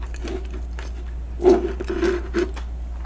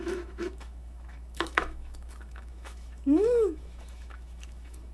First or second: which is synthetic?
second